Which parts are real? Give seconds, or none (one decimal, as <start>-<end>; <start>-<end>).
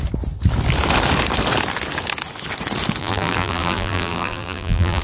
0.0-3.0